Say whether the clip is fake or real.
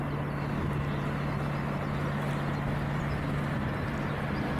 real